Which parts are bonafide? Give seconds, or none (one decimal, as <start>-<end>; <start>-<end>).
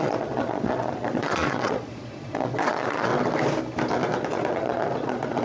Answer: 3.1-4.3